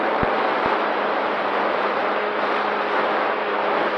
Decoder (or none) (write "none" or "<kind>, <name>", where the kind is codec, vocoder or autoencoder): none